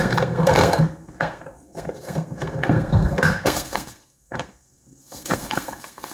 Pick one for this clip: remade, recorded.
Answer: remade